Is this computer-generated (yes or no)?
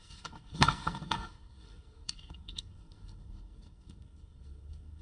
yes